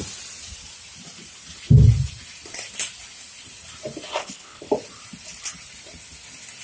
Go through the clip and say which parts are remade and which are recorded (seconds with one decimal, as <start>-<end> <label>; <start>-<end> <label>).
0.0-4.2 recorded; 4.2-4.7 remade; 4.7-6.6 recorded